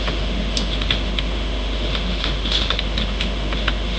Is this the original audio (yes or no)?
no